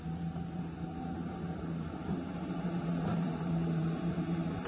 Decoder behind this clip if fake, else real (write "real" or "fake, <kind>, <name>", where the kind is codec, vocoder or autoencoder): fake, vocoder, BigVGAN v2